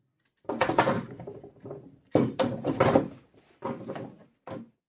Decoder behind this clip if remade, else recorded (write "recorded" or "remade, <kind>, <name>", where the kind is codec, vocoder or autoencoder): recorded